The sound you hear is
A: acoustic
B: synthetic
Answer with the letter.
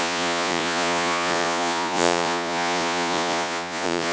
B